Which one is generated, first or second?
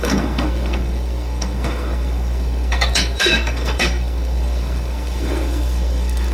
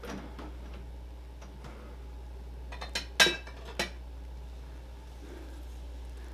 first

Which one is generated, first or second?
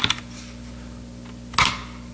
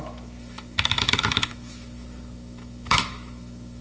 second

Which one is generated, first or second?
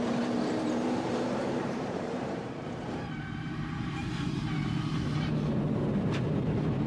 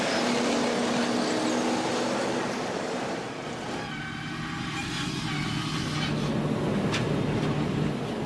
first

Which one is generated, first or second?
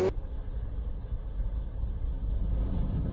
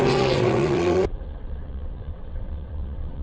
second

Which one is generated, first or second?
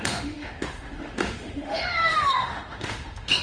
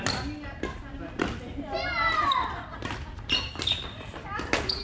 first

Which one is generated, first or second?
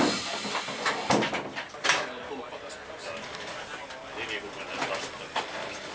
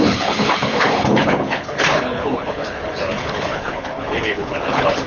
second